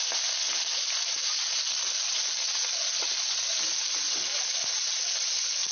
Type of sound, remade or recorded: recorded